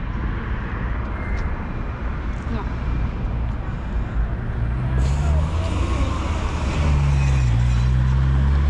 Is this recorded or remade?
recorded